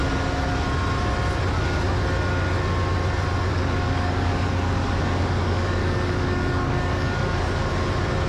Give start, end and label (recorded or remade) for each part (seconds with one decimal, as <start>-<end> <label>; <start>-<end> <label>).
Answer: 0.0-3.5 recorded; 3.5-7.7 remade; 7.7-8.3 recorded